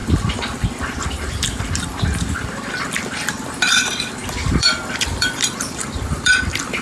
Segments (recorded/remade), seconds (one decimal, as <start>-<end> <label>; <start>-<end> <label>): 0.0-3.7 recorded; 3.7-6.8 remade